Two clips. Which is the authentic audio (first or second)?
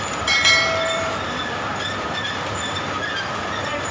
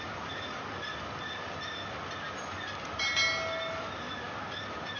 second